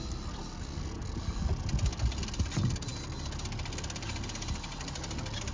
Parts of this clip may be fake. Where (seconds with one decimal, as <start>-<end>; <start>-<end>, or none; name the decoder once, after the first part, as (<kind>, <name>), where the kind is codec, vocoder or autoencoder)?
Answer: none